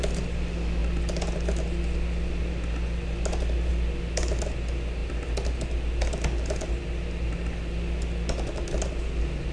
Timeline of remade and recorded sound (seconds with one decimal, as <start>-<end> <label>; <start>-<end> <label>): 0.0-9.5 recorded